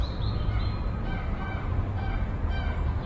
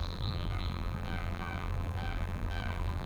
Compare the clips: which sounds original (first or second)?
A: first